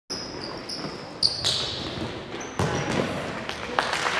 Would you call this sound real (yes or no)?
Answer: yes